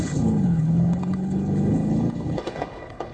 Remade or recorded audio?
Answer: remade